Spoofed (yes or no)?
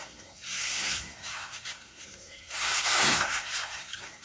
yes